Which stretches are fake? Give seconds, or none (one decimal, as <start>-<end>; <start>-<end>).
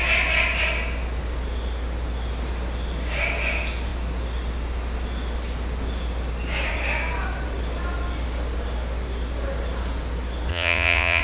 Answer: 10.5-11.2